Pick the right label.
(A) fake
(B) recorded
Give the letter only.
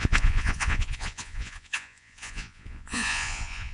A